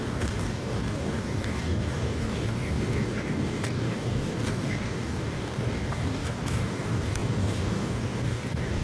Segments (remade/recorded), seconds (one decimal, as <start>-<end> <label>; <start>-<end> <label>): 0.0-8.8 remade